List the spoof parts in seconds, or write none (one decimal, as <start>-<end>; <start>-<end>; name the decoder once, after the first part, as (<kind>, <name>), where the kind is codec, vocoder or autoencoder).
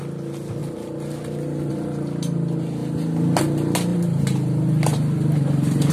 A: 3.9-5.9 (vocoder, BigVGAN v2)